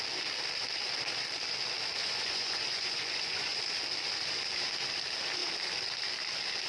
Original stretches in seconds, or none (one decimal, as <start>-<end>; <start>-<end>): 0.0-2.0; 3.6-6.7